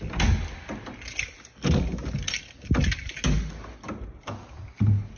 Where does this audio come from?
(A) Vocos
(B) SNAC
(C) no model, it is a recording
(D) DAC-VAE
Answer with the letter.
C